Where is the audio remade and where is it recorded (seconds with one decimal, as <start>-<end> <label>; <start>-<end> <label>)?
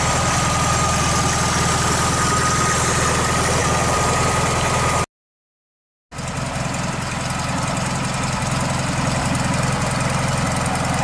0.0-11.0 recorded